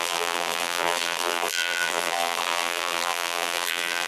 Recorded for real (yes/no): no